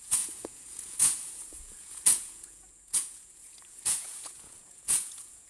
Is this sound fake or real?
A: fake